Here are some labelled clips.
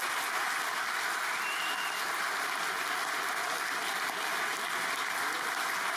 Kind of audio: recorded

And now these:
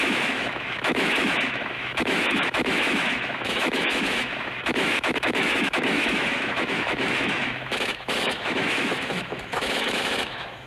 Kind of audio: remade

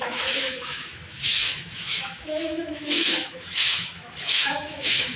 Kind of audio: remade